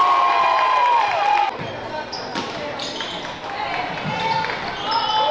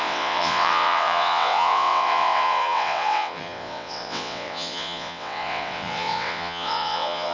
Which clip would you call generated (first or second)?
second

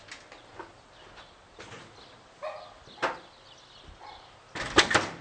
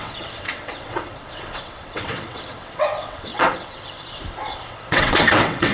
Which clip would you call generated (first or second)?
second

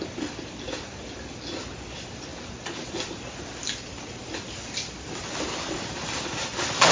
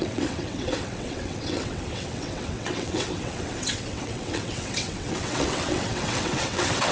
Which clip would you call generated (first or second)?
second